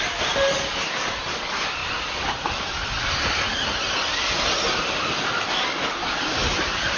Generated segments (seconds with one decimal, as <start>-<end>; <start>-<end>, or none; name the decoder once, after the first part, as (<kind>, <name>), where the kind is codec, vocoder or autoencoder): none